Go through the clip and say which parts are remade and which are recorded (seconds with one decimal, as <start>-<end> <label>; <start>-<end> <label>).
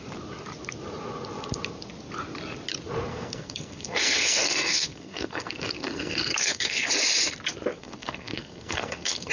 0.0-3.1 recorded; 3.1-6.9 remade; 6.9-7.7 recorded; 7.7-9.3 remade